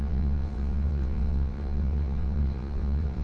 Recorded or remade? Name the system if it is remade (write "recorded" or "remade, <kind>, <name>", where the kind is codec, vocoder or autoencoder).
remade, vocoder, WaveNeXt